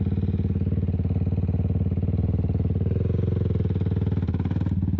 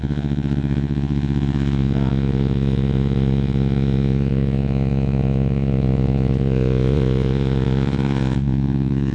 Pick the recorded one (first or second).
first